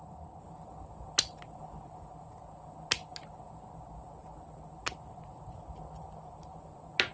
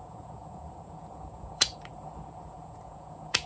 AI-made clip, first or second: second